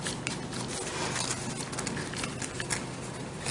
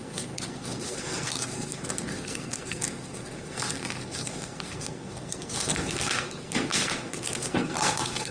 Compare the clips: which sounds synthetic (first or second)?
second